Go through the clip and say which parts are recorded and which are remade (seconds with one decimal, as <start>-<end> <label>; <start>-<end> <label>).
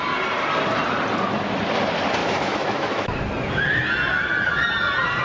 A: 0.0-2.2 recorded; 2.2-3.2 remade; 3.2-5.2 recorded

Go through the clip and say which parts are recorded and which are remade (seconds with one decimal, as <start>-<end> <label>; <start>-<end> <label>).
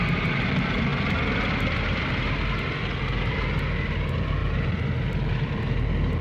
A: 0.0-6.2 recorded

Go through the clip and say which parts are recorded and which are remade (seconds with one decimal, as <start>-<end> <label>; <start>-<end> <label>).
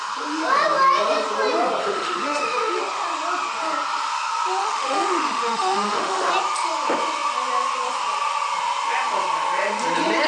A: 0.0-1.8 recorded; 1.8-2.8 remade; 2.8-4.6 recorded; 4.6-6.3 remade; 6.3-10.3 recorded